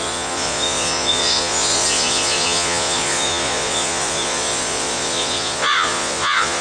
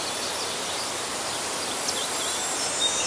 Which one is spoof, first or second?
first